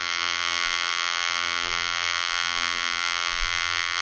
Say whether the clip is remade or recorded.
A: remade